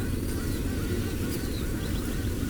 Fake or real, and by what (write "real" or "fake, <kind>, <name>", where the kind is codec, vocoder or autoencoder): fake, vocoder, BigVGAN v2